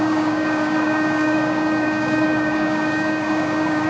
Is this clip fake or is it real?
fake